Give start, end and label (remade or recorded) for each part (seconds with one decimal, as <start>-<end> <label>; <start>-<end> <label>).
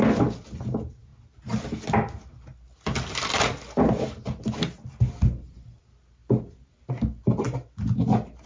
0.0-8.5 recorded